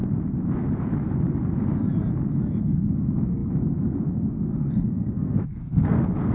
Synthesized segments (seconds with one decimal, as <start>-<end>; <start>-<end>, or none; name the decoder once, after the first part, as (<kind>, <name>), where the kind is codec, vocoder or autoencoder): 2.5-6.3 (codec, SNAC)